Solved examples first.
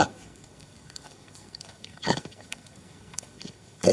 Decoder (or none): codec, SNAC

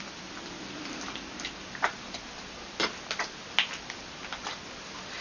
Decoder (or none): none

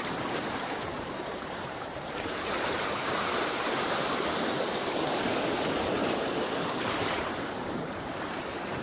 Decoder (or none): vocoder, BigVGAN v2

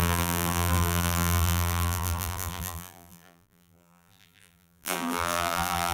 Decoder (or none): vocoder, BigVGAN v2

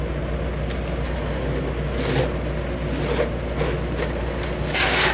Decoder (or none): none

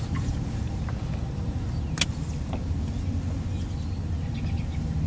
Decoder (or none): none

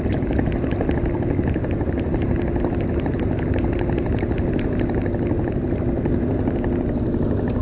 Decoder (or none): none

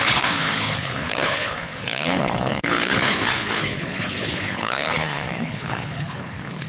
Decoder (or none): codec, HILCodec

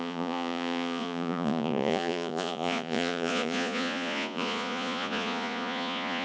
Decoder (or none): vocoder, Vocos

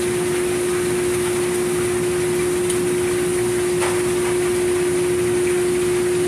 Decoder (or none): none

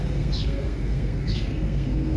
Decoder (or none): codec, SNAC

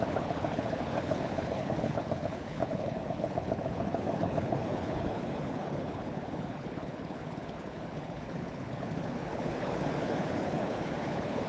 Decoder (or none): codec, HILCodec